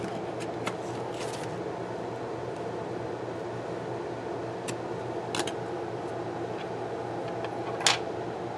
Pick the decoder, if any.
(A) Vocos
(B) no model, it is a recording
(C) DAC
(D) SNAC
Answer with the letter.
B